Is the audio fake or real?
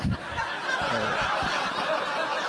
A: real